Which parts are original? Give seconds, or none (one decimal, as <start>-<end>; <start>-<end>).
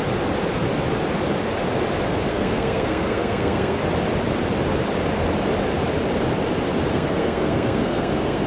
0.0-2.3; 3.8-6.9